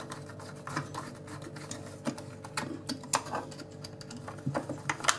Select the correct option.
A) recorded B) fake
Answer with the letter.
A